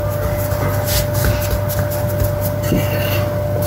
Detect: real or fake real